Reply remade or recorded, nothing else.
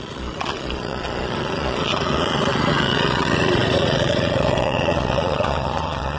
remade